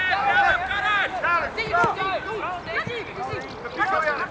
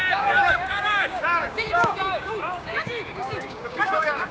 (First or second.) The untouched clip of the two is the first